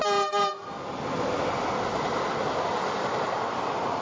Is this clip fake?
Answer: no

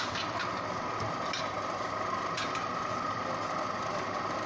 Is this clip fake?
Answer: no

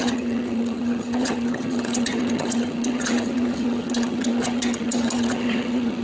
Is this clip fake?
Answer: yes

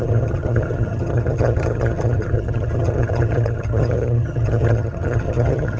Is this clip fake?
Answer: yes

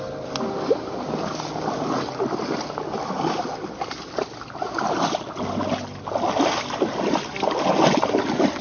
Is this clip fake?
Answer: no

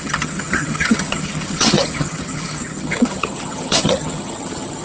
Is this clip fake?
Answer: yes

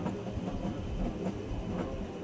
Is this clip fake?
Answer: no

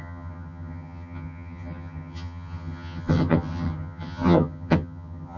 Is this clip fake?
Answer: yes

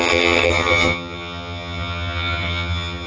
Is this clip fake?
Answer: yes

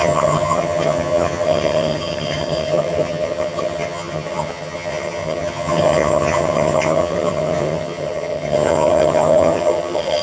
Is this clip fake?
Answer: yes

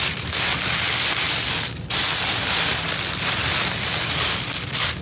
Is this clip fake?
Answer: no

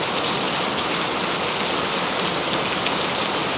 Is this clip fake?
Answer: no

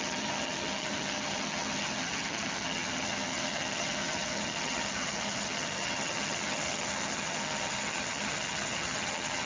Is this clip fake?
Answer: yes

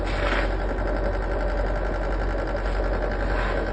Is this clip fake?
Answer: no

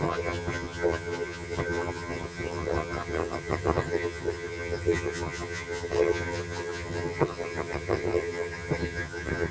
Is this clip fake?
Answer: yes